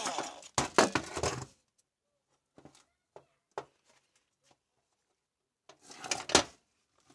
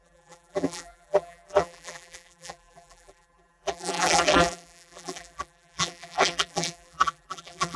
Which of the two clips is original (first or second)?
first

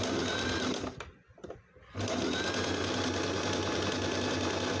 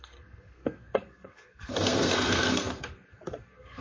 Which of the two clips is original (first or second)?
first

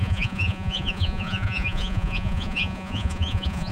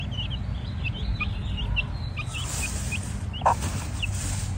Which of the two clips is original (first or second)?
second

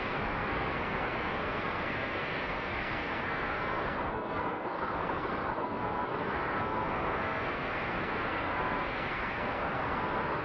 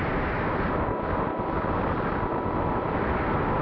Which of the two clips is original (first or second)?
second